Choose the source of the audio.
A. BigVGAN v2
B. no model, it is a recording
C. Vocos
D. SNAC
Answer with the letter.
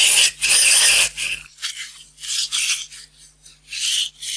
B